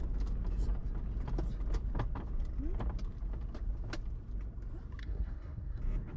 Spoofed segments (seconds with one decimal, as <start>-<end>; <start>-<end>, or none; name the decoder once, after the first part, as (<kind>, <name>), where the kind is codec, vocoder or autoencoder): 5.0-5.8 (codec, SNAC)